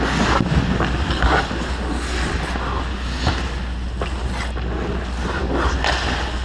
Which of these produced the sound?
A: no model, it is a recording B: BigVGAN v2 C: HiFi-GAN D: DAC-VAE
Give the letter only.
A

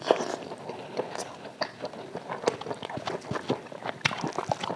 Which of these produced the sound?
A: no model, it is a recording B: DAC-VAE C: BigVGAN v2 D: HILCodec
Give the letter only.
A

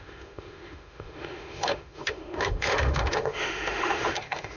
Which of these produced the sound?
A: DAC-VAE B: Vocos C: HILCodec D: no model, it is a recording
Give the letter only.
A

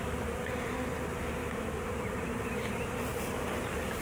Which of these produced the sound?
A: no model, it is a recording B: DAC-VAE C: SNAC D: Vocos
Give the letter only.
A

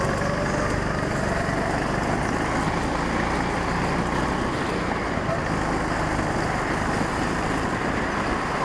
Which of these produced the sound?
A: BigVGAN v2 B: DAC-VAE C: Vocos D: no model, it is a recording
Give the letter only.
D